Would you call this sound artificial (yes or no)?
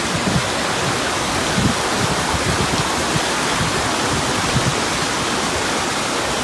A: no